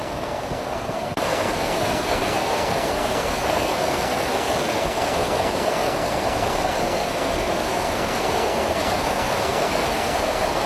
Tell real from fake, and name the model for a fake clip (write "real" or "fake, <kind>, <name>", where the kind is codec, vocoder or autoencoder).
fake, codec, SNAC